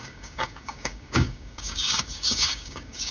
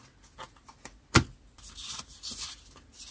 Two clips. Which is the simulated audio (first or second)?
first